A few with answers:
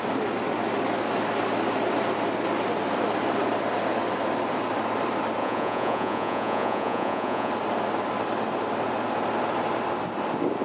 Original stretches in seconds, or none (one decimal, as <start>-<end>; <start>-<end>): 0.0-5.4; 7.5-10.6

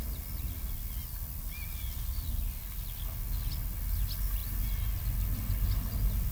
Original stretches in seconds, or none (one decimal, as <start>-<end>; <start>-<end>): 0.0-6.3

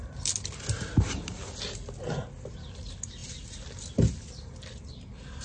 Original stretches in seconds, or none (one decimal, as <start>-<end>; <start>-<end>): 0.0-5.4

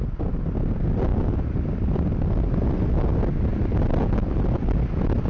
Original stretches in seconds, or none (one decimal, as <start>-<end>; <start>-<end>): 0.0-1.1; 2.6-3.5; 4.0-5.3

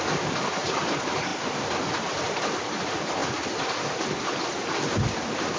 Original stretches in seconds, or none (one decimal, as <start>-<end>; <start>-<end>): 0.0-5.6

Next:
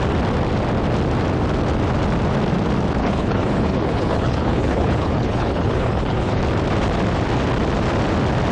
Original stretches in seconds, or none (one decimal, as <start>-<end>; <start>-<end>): 0.0-3.0; 6.4-8.5

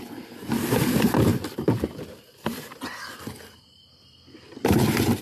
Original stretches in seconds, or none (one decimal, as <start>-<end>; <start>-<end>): 1.3-2.1; 2.9-5.2

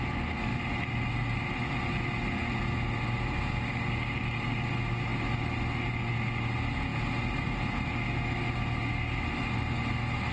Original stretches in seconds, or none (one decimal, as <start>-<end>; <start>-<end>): 0.0-10.3